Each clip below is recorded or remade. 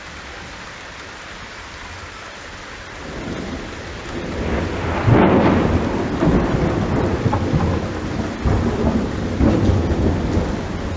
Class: recorded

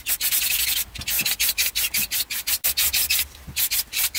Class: recorded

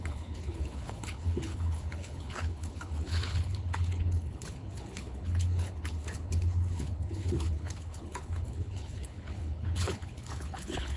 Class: remade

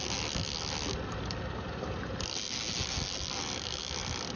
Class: recorded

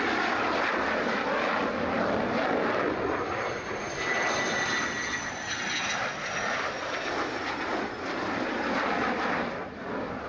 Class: recorded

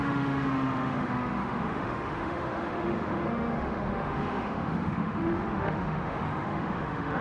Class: remade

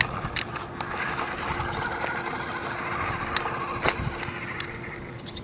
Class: recorded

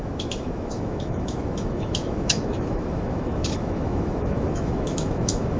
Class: remade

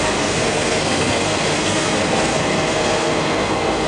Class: remade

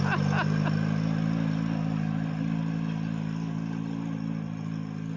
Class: recorded